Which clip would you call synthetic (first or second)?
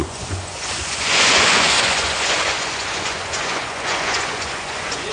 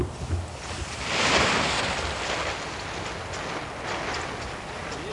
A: first